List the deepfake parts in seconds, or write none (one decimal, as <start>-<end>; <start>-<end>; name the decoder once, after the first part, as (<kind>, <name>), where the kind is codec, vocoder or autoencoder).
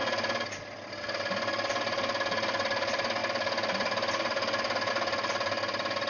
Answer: none